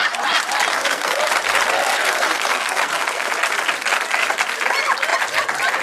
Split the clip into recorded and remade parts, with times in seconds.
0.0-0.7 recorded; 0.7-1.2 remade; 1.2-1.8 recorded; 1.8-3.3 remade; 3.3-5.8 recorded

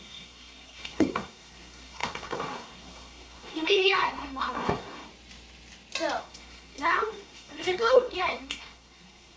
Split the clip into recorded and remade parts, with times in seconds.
0.0-5.1 remade; 5.1-6.2 recorded; 6.2-9.4 remade

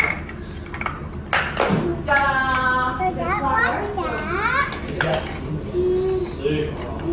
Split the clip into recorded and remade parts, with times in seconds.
0.0-7.1 recorded

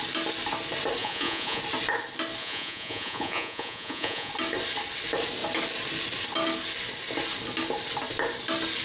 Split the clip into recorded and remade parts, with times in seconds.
0.0-1.0 recorded; 1.0-1.6 remade; 1.6-2.4 recorded; 2.4-4.3 remade; 4.3-8.8 recorded

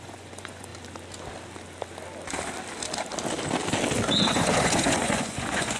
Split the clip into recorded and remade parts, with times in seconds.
0.0-0.7 remade; 0.7-4.2 recorded; 4.2-5.8 remade